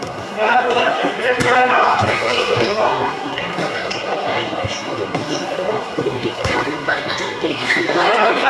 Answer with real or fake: fake